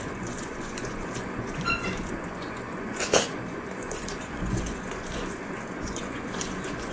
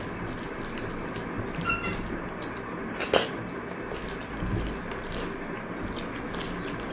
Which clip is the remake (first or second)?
first